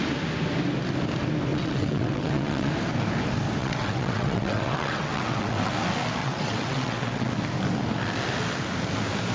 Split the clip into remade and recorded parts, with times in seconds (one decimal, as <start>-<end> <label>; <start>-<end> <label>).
0.0-1.5 recorded; 1.5-2.7 remade; 2.7-3.6 recorded; 3.6-5.7 remade; 5.7-6.2 recorded; 6.2-7.3 remade; 7.3-9.3 recorded